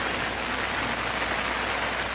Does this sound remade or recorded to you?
recorded